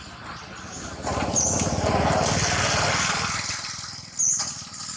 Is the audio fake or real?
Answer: real